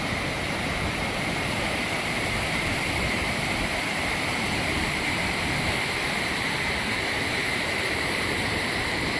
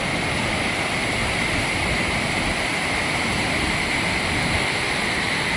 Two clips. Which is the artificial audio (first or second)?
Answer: first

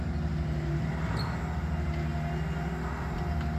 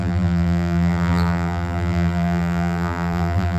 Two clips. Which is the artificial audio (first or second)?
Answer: second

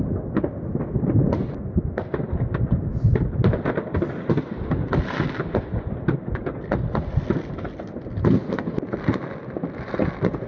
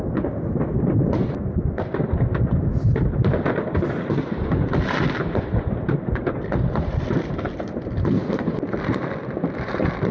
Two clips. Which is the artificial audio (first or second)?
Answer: second